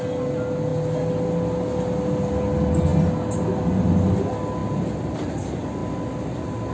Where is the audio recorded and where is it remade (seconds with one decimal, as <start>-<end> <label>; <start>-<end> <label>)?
0.0-6.7 recorded